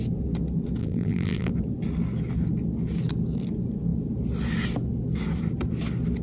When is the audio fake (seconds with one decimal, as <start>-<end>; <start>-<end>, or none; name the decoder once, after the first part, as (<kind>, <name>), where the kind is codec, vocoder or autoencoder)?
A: 0.8-1.5 (vocoder, BigVGAN v2)